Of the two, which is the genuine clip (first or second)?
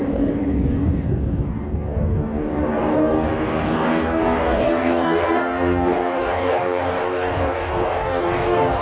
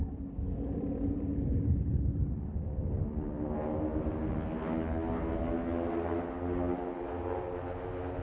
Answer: second